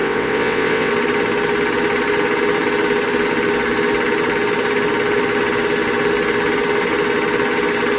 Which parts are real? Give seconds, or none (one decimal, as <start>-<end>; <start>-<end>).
0.9-8.0

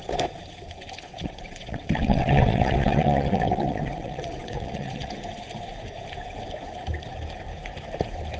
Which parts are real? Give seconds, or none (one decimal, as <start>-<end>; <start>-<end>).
0.0-1.1; 5.1-8.4

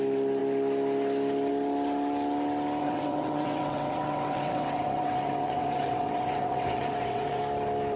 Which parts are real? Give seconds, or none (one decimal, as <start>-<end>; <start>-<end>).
0.0-2.8; 7.4-8.0